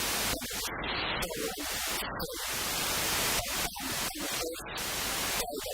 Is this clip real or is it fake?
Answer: real